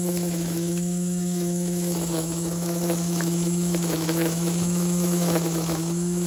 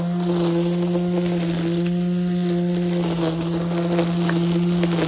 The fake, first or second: first